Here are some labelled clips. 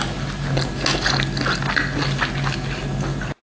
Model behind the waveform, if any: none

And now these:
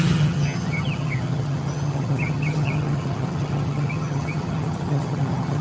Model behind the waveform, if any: vocoder, HiFi-GAN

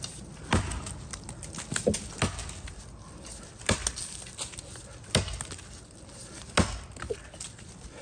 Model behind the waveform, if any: none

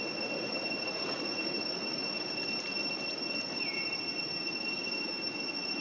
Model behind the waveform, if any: none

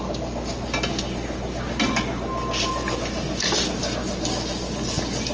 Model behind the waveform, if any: none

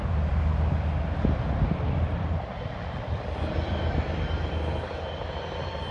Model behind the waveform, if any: vocoder, BigVGAN v2